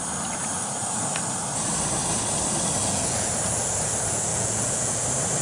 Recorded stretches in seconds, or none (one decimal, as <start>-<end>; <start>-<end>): 0.0-2.8; 3.3-4.3; 5.0-5.4